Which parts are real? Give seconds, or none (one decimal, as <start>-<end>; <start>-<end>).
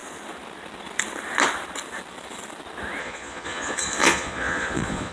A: 0.0-3.0